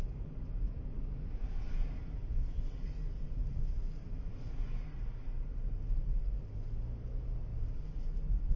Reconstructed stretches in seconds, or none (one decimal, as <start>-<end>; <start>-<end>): none